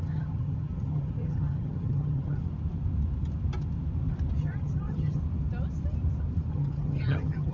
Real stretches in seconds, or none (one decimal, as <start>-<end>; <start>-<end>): 2.4-4.4; 5.2-6.5

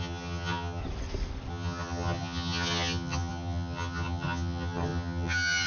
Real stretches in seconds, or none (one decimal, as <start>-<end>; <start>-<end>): 0.8-1.5

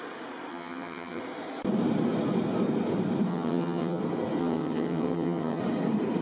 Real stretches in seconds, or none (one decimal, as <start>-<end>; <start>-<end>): 0.0-0.5; 1.2-3.3; 4.0-4.4; 5.6-6.2